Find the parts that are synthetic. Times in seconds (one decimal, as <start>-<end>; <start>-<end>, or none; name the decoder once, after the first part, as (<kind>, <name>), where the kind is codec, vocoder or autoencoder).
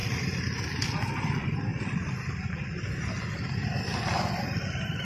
1.7-3.1 (vocoder, BigVGAN v2)